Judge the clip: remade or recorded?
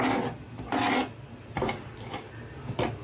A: recorded